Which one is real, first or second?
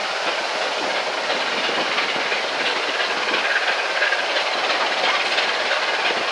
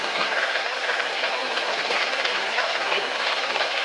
first